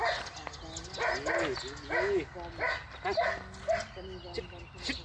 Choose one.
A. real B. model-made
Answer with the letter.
A